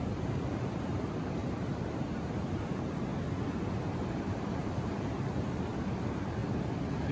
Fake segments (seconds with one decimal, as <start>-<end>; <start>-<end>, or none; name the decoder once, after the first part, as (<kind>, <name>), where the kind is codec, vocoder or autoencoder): 0.0-3.1 (vocoder, BigVGAN v2); 4.1-6.4